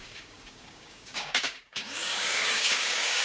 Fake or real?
fake